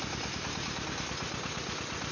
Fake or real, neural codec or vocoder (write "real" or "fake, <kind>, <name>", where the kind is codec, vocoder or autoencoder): real